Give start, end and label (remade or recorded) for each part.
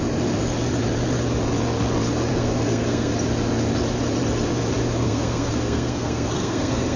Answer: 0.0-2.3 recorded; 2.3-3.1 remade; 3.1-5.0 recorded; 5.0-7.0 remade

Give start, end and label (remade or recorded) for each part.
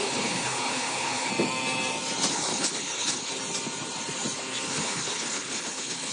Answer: 0.0-1.3 remade; 1.3-2.3 recorded; 2.3-3.3 remade; 3.3-4.7 recorded; 4.7-6.1 remade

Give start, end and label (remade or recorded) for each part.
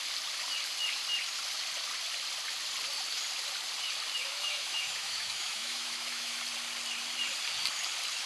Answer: 0.0-4.3 recorded; 4.3-6.4 remade; 6.4-8.3 recorded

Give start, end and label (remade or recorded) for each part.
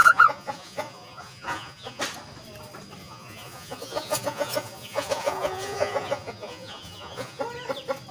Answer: 0.0-2.0 remade; 2.0-3.0 recorded; 3.0-7.4 remade; 7.4-8.1 recorded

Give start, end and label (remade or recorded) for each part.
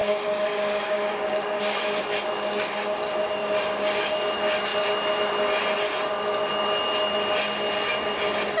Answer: 0.0-2.0 remade; 2.0-8.6 recorded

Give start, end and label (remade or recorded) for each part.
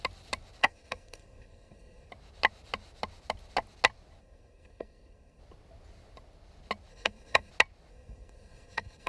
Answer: 0.0-0.6 recorded; 0.6-2.1 remade; 2.1-4.2 recorded; 4.2-5.4 remade; 5.4-6.9 recorded; 6.9-7.5 remade; 7.5-7.9 recorded; 7.9-9.1 remade